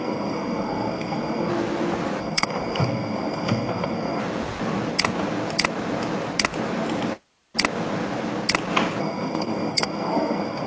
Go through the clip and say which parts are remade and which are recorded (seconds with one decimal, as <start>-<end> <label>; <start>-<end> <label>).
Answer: 0.0-1.5 remade; 1.5-2.2 recorded; 2.2-4.2 remade; 4.2-9.0 recorded; 9.0-10.7 remade